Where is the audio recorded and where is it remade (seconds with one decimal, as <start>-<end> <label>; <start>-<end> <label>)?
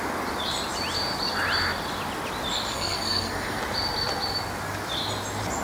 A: 0.0-2.7 recorded; 2.7-3.6 remade; 3.6-5.6 recorded